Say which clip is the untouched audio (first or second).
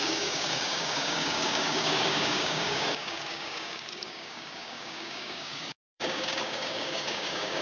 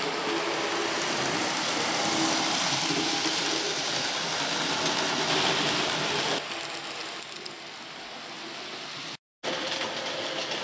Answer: second